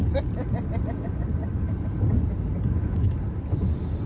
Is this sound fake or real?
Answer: real